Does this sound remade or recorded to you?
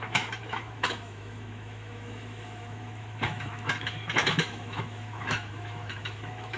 remade